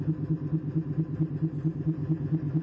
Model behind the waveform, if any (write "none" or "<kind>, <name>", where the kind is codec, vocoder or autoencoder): none